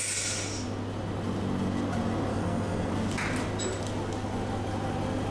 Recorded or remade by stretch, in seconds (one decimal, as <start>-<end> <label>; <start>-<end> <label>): 0.0-2.3 recorded; 2.3-2.9 remade; 2.9-5.3 recorded